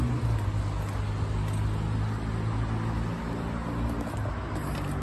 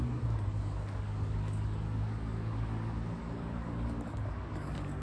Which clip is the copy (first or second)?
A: second